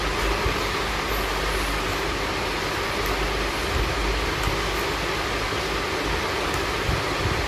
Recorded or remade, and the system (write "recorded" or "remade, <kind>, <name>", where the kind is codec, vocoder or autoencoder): recorded